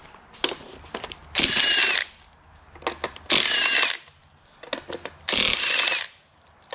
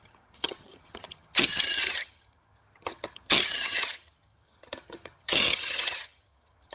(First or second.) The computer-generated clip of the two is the second